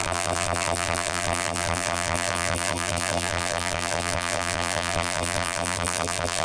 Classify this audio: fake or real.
fake